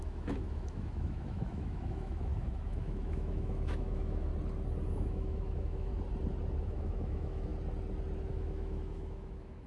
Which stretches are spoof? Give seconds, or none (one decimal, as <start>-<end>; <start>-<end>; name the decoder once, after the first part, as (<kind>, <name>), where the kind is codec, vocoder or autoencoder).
0.0-4.3 (autoencoder, DAC-VAE); 4.9-5.9; 6.6-7.5; 8.3-9.7